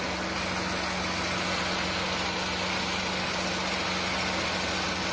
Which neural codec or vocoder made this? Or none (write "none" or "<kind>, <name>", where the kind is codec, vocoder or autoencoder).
none